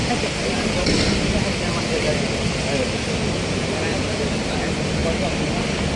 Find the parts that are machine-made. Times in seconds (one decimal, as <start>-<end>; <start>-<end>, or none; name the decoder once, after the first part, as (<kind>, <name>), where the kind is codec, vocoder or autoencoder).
none